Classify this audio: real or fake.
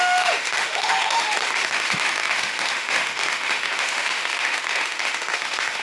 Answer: fake